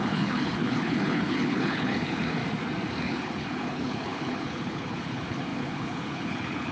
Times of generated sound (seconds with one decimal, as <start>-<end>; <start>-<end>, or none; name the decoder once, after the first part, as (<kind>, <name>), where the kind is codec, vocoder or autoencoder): 0.0-2.4 (codec, HILCodec); 3.0-6.7